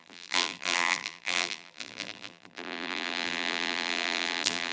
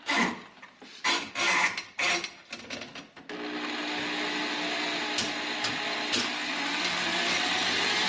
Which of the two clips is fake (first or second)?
first